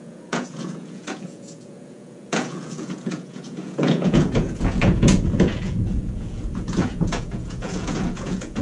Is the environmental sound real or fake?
fake